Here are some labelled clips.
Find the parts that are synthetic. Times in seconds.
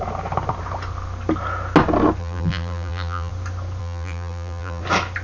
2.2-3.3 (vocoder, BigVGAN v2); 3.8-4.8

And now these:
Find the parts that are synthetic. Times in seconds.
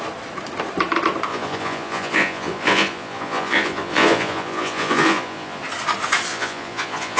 1.3-5.6 (vocoder, Vocos); 6.3-7.2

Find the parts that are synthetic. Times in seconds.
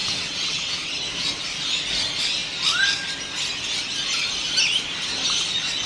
0.0-0.9 (vocoder, WaveNeXt)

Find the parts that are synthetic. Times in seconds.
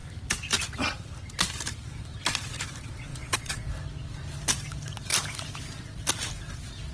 3.1-3.7 (vocoder, Vocos)